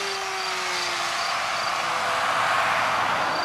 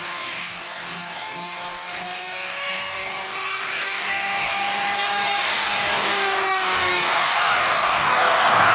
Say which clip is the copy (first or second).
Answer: second